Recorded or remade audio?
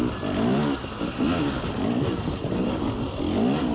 recorded